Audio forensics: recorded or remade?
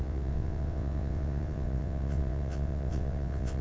remade